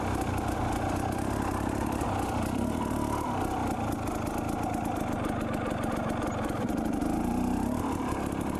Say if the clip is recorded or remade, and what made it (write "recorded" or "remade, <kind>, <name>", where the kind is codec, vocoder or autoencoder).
recorded